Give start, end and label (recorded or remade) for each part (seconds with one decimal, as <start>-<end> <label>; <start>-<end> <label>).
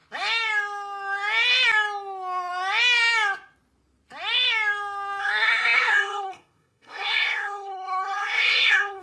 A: 0.0-5.2 recorded; 5.2-9.0 remade